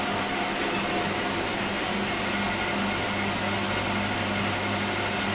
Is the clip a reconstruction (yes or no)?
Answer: no